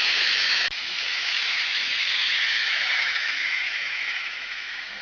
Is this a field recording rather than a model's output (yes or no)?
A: no